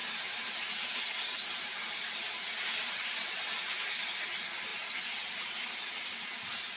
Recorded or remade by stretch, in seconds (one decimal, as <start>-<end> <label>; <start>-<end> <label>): 0.0-3.4 remade; 3.4-6.8 recorded